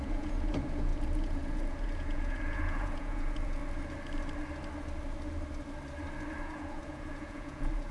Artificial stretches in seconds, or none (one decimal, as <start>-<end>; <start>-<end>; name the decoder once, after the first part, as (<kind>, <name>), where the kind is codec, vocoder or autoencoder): 0.0-3.6 (vocoder, Vocos); 6.4-7.9